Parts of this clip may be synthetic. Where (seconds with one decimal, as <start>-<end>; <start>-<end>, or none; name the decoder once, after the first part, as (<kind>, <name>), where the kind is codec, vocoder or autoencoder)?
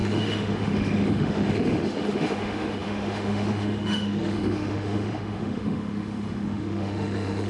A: 0.0-7.5 (autoencoder, DAC-VAE)